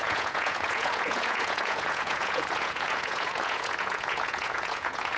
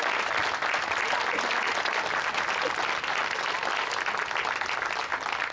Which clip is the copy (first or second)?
first